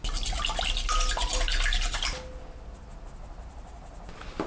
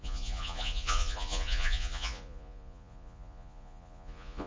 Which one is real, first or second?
first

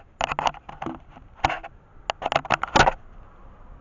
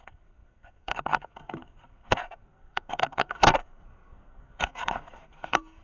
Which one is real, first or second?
first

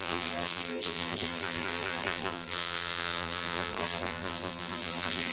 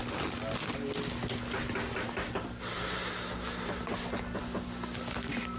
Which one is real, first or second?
second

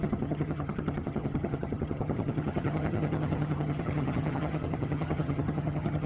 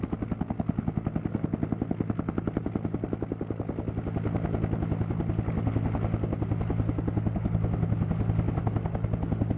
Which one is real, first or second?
second